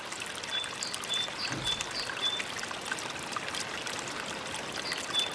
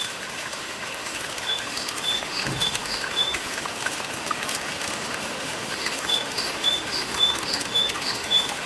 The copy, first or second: second